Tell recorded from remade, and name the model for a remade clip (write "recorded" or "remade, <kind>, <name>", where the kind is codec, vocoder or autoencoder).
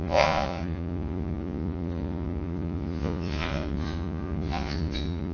remade, vocoder, Vocos